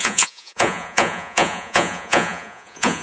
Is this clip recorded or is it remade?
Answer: remade